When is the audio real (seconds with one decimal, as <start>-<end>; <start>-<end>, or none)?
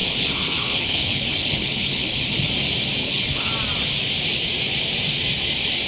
2.5-3.0; 3.5-5.9